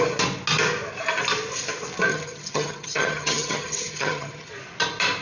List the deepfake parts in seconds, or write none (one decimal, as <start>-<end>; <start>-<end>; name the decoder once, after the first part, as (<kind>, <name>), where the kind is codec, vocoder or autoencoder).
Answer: 2.1-4.5 (vocoder, HiFi-GAN)